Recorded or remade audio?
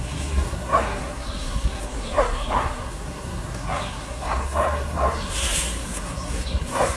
remade